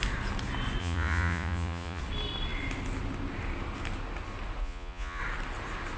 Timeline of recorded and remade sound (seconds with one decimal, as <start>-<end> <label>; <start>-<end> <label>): 0.0-0.8 recorded; 0.8-2.0 remade; 2.0-4.6 recorded; 4.6-5.2 remade; 5.2-6.0 recorded